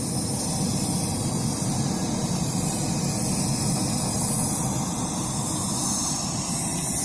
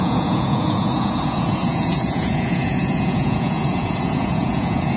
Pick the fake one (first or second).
second